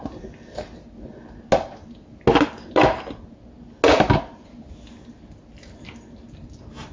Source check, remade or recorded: recorded